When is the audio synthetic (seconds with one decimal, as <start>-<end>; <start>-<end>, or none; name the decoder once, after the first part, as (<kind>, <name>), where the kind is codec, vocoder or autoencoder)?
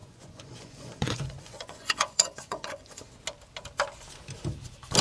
0.0-3.0 (vocoder, Vocos)